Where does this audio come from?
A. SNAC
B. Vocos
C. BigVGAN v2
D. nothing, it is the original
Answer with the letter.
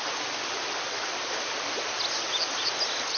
D